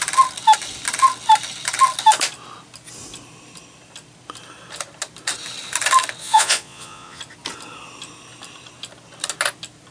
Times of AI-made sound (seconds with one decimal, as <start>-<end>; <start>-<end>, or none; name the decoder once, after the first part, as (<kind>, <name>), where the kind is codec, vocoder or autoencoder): 6.2-7.2 (vocoder, Vocos)